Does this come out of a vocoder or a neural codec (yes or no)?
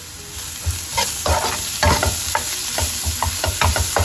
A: no